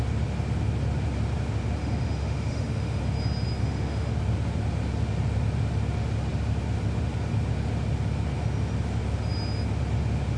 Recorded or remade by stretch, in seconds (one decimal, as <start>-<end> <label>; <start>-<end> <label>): 0.0-1.8 recorded; 1.8-3.0 remade; 3.0-3.6 recorded; 3.6-4.1 remade; 4.1-10.4 recorded